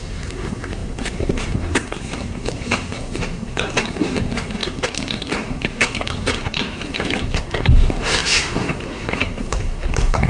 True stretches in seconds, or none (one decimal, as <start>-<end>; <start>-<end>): none